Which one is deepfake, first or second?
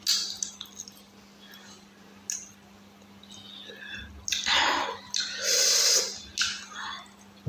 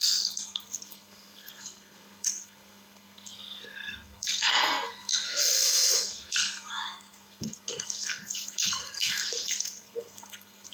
second